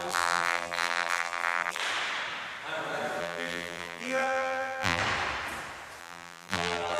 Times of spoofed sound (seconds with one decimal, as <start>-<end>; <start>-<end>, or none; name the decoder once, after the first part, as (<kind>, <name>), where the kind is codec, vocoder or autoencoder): 0.0-1.8 (vocoder, BigVGAN v2); 3.2-5.0; 6.0-7.0